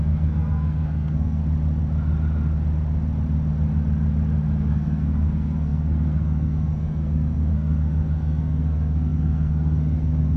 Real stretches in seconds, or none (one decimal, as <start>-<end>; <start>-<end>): 1.4-4.7